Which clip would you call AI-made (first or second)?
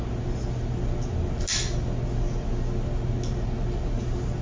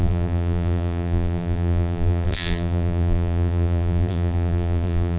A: second